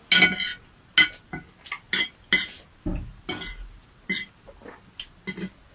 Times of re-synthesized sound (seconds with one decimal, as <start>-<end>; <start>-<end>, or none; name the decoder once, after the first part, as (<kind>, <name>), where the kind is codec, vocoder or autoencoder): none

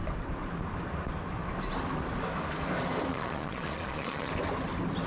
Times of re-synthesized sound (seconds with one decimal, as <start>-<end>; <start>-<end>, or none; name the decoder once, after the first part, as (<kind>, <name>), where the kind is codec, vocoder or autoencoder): 3.1-4.3 (vocoder, Vocos)

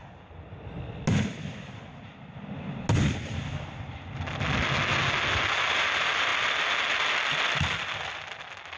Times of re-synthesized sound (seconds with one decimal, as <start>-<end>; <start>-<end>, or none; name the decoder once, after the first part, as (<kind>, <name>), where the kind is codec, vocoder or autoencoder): none

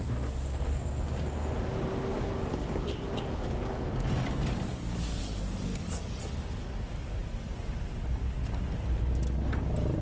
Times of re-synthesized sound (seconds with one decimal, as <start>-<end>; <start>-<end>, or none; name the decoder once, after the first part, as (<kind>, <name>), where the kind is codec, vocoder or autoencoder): 2.1-5.2 (codec, DAC)